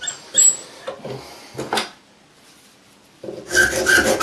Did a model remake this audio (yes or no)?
no